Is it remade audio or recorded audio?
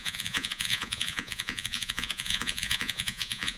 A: remade